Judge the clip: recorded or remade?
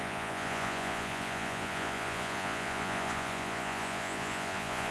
remade